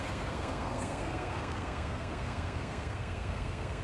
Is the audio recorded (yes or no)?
no